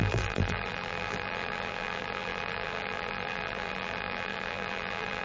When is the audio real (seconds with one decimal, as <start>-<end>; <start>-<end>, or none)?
none

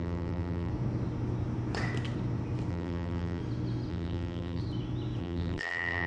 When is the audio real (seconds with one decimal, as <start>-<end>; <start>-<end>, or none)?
0.7-2.7; 3.4-3.9; 4.6-5.2